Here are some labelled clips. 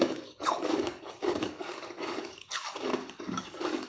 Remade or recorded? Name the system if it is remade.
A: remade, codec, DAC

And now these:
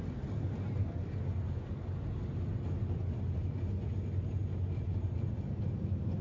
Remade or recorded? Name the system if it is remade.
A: recorded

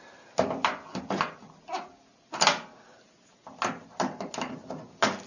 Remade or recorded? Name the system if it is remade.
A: recorded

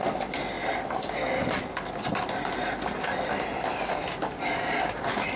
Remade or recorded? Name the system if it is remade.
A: recorded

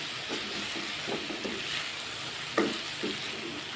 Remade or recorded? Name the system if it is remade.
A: recorded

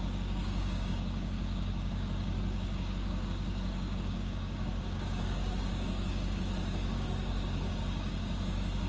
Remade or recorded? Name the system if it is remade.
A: remade, codec, DAC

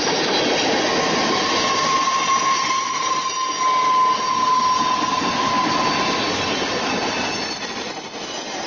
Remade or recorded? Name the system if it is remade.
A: recorded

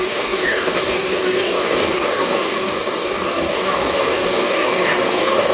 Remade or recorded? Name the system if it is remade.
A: remade, codec, DAC